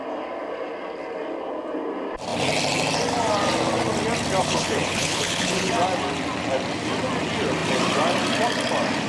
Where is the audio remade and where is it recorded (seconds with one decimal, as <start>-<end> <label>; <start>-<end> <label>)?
0.0-4.4 recorded; 4.4-5.7 remade; 5.7-9.1 recorded